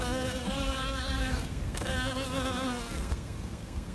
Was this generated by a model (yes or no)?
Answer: yes